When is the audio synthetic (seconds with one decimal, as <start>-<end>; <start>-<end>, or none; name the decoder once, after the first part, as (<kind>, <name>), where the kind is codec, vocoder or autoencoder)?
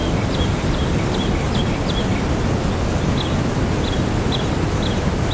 none